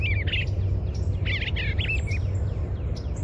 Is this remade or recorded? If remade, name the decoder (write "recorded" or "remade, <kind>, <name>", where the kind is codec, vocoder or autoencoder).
recorded